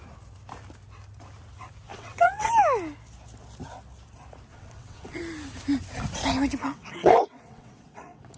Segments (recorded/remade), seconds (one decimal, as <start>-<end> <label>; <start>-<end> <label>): 0.0-1.9 recorded; 1.9-2.5 remade; 2.5-4.5 recorded; 4.5-5.2 remade; 5.2-6.6 recorded; 6.6-8.4 remade